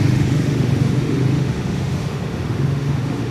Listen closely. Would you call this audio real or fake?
fake